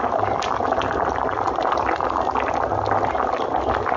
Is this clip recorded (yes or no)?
yes